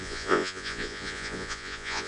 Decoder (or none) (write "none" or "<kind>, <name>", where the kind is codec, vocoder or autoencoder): vocoder, Vocos